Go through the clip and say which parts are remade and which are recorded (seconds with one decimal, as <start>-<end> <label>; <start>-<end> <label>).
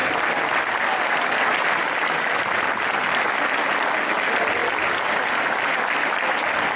0.0-6.8 recorded